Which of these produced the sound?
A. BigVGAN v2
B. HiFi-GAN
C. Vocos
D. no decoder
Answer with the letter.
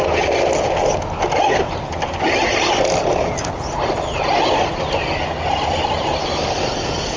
D